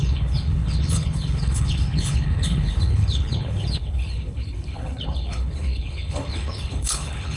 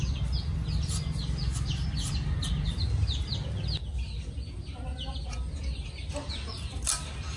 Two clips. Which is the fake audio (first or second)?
first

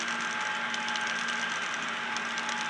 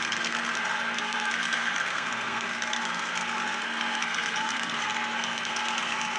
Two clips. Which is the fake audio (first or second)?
second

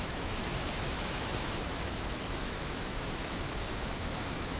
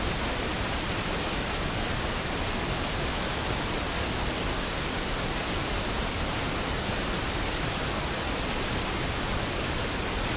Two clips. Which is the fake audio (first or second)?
first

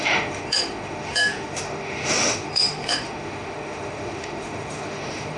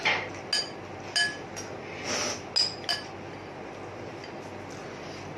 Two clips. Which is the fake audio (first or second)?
first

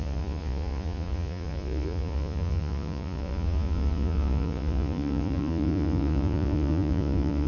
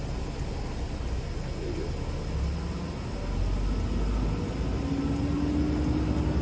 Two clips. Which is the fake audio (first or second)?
first